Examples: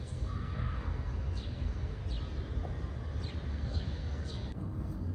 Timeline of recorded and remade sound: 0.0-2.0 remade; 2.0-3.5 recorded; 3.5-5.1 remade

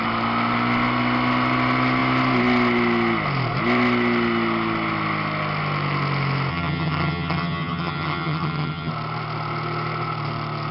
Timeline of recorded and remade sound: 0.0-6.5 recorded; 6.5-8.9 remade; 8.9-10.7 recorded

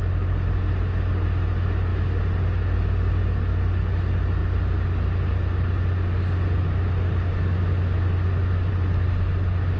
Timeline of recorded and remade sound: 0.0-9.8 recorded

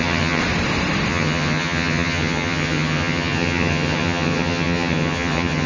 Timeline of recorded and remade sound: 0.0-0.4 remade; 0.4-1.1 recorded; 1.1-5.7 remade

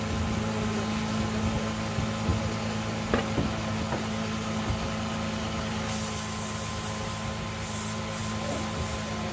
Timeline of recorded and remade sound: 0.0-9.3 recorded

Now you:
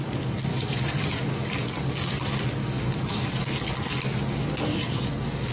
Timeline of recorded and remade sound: 0.0-0.5 recorded; 0.5-2.2 remade; 2.2-2.6 recorded; 2.6-3.7 remade; 3.7-4.7 recorded; 4.7-5.5 remade

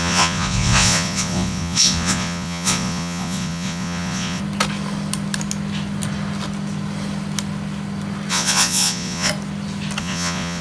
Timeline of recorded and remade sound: 0.0-4.4 remade; 4.4-8.3 recorded; 8.3-9.3 remade; 9.3-10.0 recorded; 10.0-10.6 remade